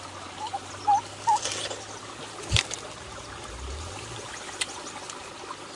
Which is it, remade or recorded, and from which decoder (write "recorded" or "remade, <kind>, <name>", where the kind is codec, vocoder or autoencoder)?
recorded